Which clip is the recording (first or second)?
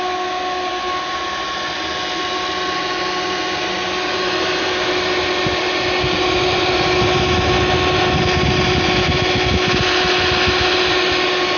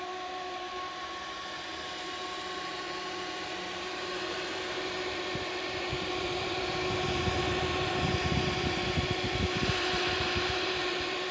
first